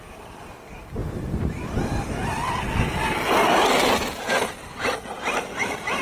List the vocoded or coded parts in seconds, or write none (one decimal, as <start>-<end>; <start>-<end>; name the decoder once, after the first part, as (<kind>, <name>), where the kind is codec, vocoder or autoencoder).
none